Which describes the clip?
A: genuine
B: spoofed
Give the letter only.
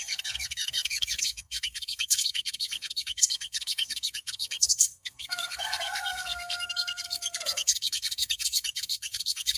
B